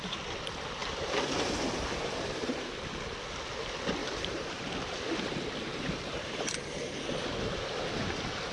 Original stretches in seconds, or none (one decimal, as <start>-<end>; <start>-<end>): 0.0-0.8; 2.7-4.0; 4.7-5.7; 7.1-8.5